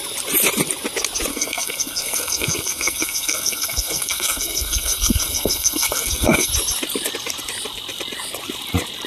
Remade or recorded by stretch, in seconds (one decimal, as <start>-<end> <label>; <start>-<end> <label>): 0.0-1.3 recorded; 1.3-6.5 remade; 6.5-9.1 recorded